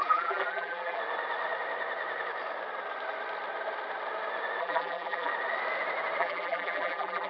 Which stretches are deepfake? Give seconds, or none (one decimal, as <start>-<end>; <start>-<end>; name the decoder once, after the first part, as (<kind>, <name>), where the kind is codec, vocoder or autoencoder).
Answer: 0.0-1.0 (vocoder, BigVGAN v2); 4.6-5.3; 6.2-7.3